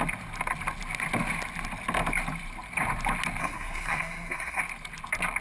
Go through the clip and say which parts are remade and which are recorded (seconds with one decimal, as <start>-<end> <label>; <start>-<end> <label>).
0.0-3.4 recorded; 3.4-4.6 remade; 4.6-5.4 recorded